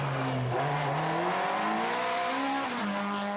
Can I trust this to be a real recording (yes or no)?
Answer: yes